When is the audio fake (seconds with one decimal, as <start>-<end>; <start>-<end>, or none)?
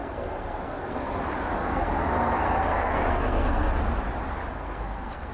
0.0-1.2; 1.6-3.7; 4.5-5.3